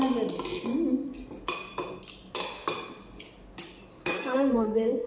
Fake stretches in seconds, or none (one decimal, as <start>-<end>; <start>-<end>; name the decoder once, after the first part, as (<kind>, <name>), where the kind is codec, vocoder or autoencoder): 4.0-5.1 (codec, SNAC)